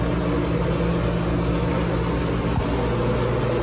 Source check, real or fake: real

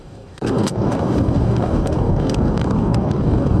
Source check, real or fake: fake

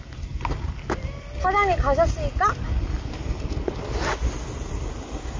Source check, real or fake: real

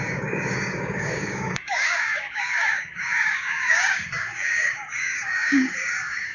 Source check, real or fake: fake